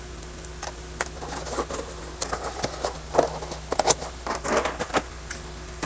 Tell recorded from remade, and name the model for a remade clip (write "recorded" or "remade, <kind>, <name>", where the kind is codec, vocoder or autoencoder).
recorded